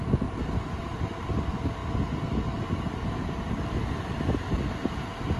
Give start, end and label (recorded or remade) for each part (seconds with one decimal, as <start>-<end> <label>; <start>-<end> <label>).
0.0-5.4 recorded